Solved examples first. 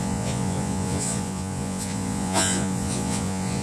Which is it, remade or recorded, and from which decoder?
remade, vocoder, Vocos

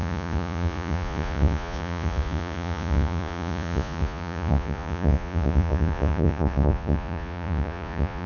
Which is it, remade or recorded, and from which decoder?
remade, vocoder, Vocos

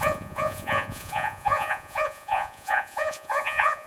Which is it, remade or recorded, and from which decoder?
remade, vocoder, Vocos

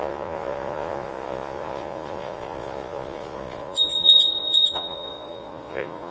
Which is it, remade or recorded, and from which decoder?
remade, vocoder, Vocos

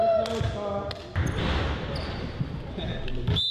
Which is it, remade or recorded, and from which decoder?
recorded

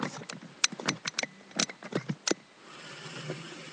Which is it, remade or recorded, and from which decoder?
recorded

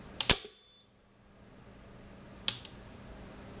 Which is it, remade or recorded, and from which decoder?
recorded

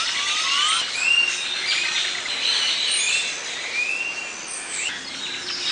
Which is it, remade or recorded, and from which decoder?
recorded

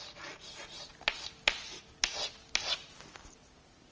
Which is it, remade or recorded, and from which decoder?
recorded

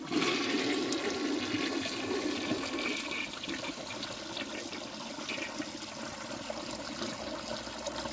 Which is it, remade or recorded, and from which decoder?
recorded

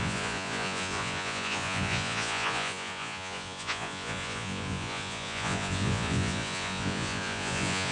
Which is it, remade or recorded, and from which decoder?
remade, vocoder, Vocos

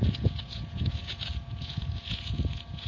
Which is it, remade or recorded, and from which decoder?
remade, vocoder, Vocos